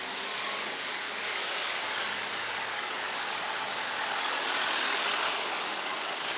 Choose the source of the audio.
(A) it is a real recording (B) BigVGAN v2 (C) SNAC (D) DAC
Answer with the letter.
D